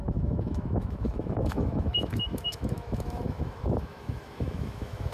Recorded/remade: remade